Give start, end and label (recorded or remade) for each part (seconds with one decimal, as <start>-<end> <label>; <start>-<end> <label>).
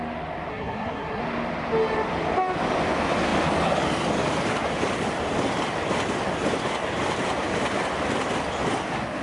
0.0-0.5 recorded; 0.5-1.2 remade; 1.2-9.2 recorded